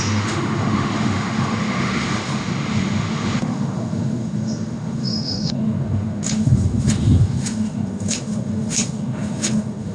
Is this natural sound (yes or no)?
no